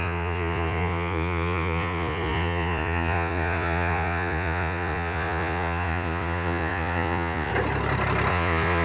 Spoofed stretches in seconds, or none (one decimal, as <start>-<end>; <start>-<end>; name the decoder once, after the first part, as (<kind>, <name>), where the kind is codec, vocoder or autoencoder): 0.0-7.5 (vocoder, Vocos); 8.3-8.8